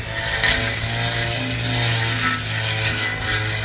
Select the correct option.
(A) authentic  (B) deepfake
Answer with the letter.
A